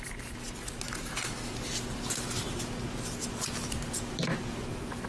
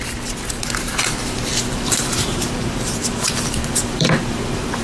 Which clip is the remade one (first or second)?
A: second